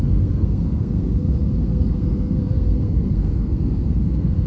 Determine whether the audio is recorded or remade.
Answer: remade